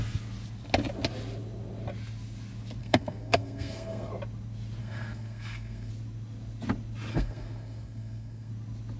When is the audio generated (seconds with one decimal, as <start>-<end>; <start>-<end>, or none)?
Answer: 2.8-4.1; 4.8-5.9; 7.1-8.5